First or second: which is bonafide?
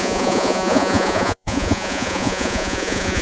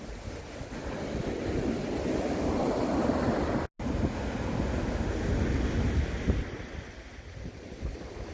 second